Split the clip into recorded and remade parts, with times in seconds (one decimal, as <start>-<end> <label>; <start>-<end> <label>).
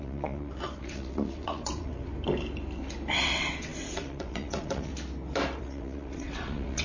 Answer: 0.0-2.1 remade; 2.1-3.1 recorded; 3.1-4.9 remade; 4.9-5.6 recorded; 5.6-6.8 remade